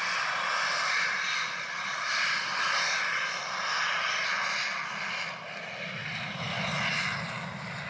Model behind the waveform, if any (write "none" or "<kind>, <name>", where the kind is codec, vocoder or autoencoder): none